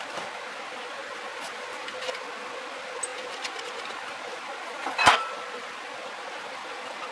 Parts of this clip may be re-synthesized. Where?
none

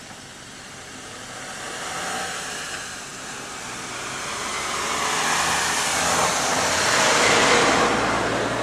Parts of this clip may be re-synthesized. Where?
none